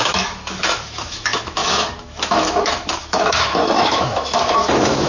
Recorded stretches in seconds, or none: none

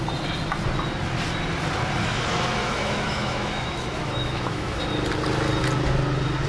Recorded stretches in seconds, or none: 0.0-2.6; 4.8-6.5

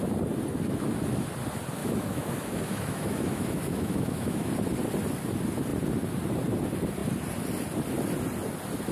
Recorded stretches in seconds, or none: 0.0-1.8; 4.5-8.9